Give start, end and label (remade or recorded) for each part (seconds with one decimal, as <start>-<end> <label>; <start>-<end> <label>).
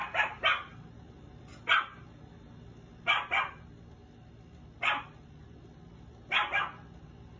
0.0-7.4 recorded